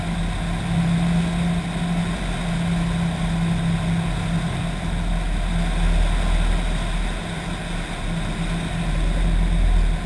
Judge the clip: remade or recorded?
recorded